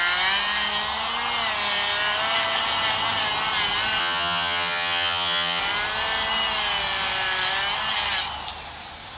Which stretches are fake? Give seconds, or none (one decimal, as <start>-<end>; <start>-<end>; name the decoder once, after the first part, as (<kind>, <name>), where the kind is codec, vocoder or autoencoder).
4.0-5.6 (vocoder, HiFi-GAN)